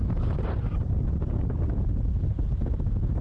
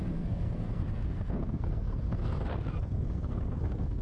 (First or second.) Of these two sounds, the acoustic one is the first